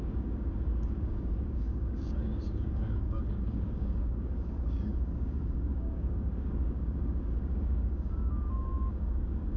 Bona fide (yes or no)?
no